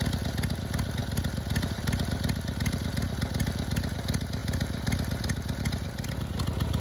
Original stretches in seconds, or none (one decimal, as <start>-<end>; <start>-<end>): 0.0-1.0; 3.9-4.4; 5.6-6.8